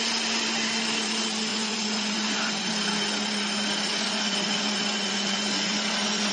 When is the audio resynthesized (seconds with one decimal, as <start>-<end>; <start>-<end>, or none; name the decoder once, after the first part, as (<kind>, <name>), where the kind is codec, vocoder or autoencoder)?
1.5-2.7 (vocoder, Vocos); 3.9-6.3

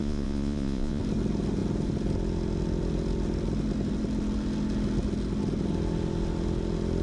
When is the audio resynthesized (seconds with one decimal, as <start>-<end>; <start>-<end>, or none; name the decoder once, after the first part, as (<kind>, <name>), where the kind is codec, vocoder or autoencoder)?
0.0-1.0 (vocoder, Vocos)

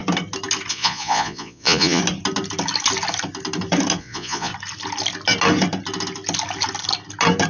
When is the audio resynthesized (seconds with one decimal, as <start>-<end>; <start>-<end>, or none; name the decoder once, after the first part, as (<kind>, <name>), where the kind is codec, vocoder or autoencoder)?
0.7-2.0 (vocoder, Vocos); 4.0-4.5